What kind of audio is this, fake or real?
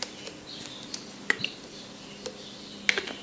real